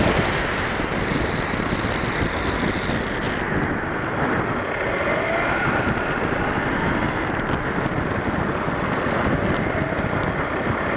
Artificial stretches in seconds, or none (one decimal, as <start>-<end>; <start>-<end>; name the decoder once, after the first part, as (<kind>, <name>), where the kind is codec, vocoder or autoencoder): none